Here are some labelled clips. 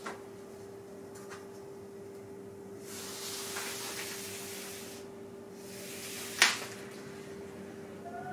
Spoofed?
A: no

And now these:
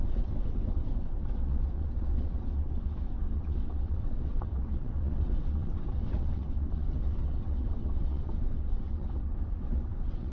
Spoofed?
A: yes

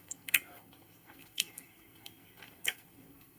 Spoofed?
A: yes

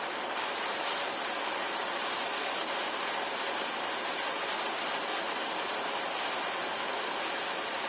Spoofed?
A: no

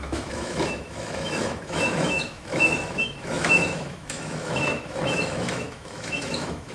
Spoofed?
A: yes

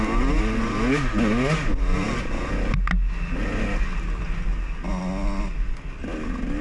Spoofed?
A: no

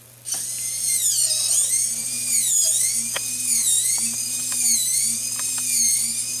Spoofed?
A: no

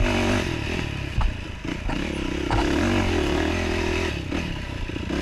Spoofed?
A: no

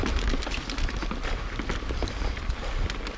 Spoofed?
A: no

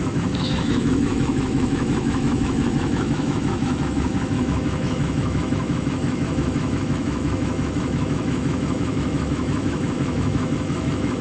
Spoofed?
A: yes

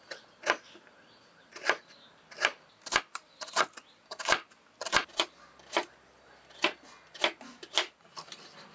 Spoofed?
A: no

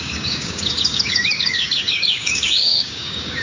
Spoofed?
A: yes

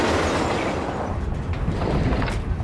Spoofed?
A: yes